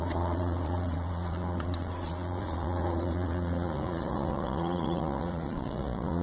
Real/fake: fake